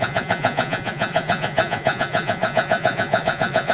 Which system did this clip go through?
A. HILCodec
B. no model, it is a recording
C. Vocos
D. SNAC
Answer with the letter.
C